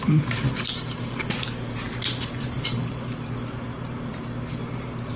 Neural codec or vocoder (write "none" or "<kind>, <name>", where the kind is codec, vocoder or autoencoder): vocoder, BigVGAN v2